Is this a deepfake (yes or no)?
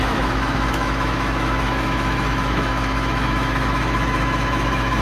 yes